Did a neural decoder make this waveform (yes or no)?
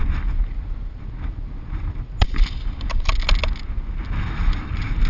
no